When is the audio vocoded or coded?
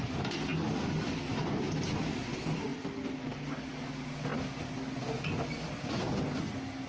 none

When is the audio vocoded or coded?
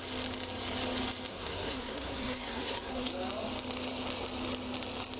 1.3-3.1 (codec, SNAC)